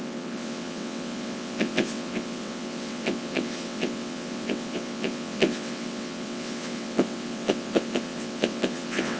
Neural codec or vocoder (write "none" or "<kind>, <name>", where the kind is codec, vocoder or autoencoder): vocoder, WaveNeXt